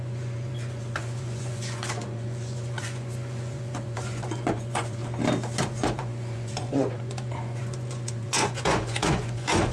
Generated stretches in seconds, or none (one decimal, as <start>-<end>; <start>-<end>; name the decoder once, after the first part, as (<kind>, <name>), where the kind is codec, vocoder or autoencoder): 0.0-5.0 (vocoder, Vocos); 5.6-9.7

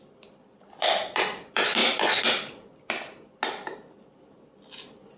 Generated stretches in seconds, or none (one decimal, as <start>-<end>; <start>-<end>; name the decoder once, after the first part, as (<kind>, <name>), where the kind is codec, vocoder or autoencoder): 0.0-1.8 (vocoder, BigVGAN v2)